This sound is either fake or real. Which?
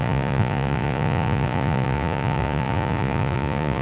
fake